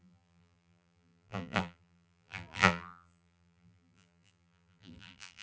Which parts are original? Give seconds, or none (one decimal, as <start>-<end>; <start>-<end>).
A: none